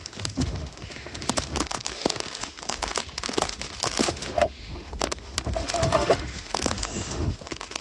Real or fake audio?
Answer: fake